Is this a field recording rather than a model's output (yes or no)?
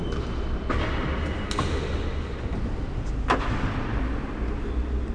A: yes